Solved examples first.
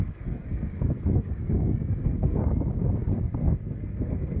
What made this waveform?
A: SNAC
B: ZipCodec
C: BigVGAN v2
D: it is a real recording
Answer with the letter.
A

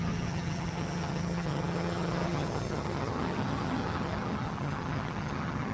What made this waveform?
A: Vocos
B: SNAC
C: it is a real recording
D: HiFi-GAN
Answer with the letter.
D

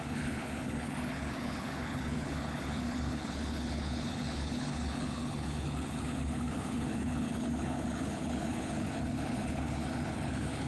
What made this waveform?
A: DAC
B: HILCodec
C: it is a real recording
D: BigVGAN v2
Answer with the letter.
B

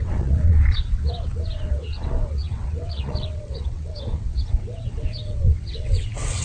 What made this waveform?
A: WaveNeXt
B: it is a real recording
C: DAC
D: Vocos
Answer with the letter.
A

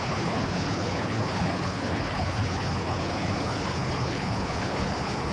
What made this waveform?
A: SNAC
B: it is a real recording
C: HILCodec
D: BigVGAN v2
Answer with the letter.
C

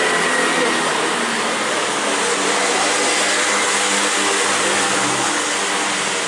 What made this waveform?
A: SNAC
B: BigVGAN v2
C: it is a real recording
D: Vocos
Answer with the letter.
C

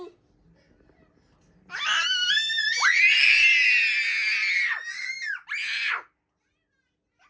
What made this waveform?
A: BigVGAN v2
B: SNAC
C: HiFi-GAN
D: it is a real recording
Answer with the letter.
D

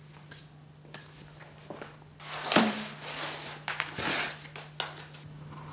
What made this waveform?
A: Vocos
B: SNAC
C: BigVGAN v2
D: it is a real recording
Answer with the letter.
D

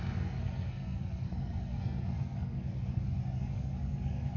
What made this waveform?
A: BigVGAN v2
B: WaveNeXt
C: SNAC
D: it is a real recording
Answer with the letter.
C